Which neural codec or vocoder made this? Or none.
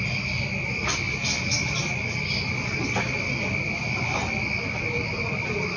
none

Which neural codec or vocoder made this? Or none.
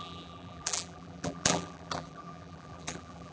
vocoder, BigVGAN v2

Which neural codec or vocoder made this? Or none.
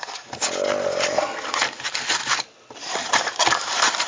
none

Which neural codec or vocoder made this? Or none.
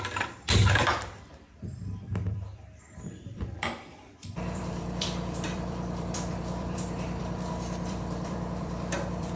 vocoder, BigVGAN v2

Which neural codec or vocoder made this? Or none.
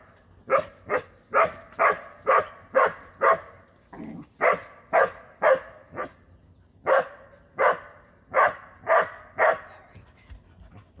none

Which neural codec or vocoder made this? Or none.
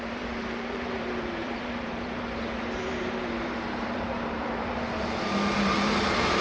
vocoder, BigVGAN v2